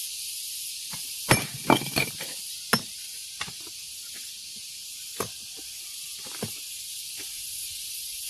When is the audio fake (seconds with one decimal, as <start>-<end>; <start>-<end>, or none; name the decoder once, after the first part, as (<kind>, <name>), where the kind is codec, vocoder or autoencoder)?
0.6-3.1 (vocoder, BigVGAN v2); 4.9-6.1; 6.9-8.3